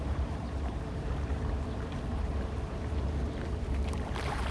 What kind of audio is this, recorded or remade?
remade